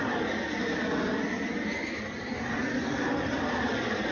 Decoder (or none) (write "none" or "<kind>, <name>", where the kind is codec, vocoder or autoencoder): none